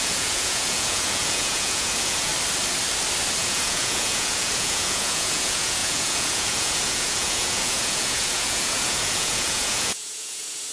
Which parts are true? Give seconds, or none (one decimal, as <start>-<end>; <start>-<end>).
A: 2.3-3.4